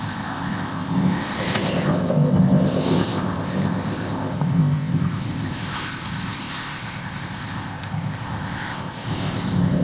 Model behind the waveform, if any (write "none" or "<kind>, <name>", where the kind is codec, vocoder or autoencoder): codec, ZipCodec